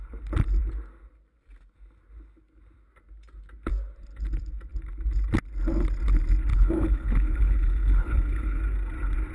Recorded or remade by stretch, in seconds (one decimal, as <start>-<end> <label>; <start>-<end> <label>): 0.0-6.5 recorded; 6.5-8.6 remade; 8.6-9.3 recorded